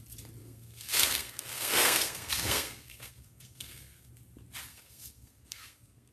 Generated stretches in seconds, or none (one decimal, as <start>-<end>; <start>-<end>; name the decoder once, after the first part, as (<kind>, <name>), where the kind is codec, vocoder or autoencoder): 0.4-4.1 (codec, SNAC); 4.7-6.1